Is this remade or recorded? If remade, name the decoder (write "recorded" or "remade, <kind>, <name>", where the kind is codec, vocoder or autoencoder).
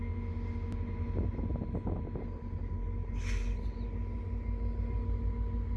recorded